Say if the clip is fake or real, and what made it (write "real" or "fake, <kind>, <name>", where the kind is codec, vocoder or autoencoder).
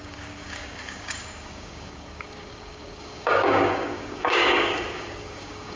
fake, codec, DAC